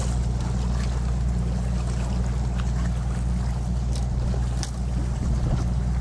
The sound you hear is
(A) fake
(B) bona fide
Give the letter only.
B